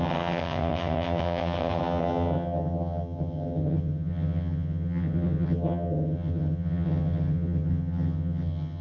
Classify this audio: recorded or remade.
remade